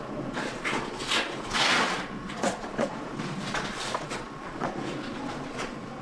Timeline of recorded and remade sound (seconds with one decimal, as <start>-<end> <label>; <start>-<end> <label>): 0.0-6.0 remade